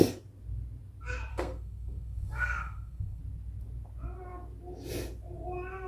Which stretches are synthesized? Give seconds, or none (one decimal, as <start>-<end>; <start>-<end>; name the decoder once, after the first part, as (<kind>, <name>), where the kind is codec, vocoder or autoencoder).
1.3-3.2 (codec, SNAC)